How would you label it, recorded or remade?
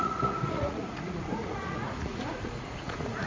remade